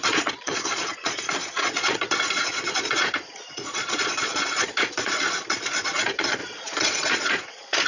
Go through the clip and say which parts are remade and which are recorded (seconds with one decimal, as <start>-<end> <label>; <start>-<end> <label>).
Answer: 0.0-7.9 remade